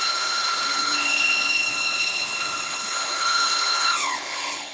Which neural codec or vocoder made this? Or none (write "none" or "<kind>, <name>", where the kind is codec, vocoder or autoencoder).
codec, HILCodec